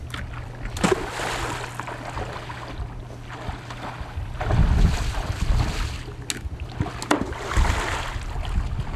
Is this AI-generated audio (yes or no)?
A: no